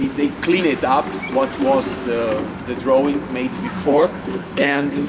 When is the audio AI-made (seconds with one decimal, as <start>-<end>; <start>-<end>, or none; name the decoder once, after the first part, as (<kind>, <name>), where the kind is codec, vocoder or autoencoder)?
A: 3.8-5.1 (codec, HILCodec)